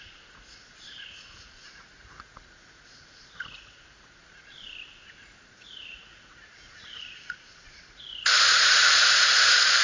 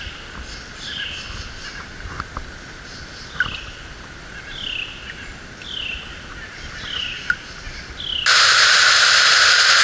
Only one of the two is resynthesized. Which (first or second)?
first